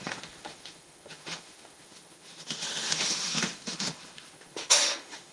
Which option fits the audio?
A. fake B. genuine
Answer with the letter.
A